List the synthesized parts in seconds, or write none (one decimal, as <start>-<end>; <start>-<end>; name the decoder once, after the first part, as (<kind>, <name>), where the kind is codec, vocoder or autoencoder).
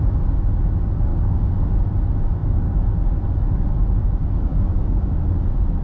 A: 1.1-1.7 (codec, DAC); 4.5-5.1